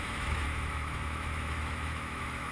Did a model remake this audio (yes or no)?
yes